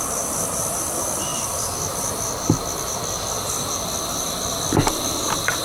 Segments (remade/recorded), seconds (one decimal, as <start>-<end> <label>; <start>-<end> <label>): 0.0-5.6 recorded